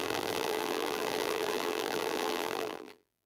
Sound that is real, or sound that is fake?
fake